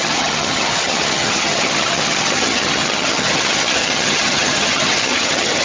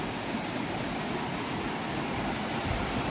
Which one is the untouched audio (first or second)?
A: second